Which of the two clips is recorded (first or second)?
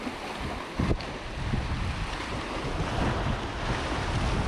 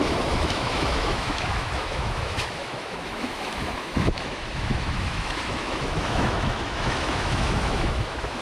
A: first